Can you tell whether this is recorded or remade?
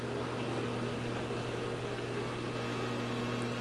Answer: recorded